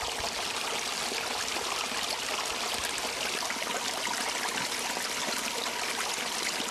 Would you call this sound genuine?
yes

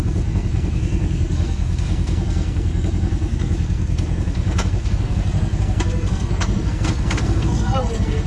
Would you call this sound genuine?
no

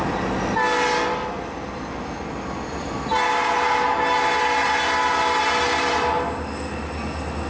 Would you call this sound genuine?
yes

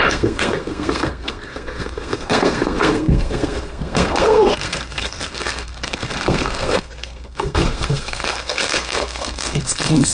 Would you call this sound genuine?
no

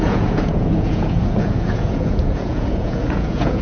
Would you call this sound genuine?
no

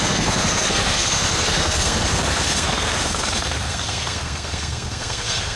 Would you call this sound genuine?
no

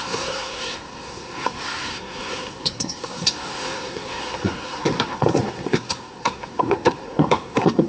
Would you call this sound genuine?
no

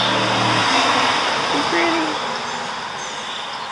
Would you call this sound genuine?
yes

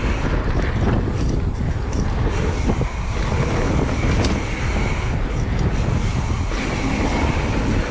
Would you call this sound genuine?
yes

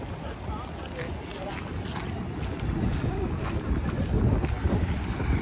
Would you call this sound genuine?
yes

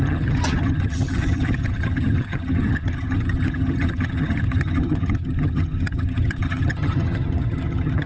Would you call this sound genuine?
no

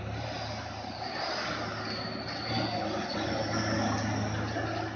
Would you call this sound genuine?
yes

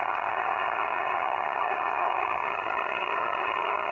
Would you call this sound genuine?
no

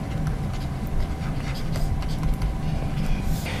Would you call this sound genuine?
yes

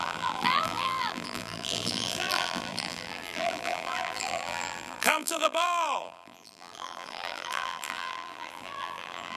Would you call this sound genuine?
no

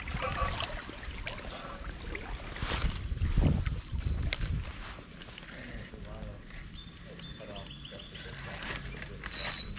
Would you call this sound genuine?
yes